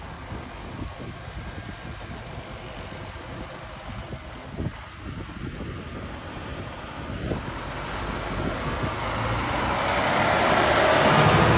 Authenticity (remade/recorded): recorded